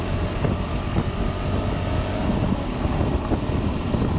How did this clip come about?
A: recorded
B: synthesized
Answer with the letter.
A